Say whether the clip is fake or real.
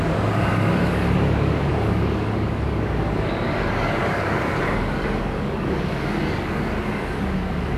fake